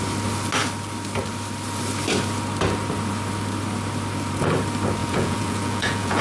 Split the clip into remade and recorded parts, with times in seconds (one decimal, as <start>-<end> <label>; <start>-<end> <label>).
0.0-5.0 recorded; 5.0-6.2 remade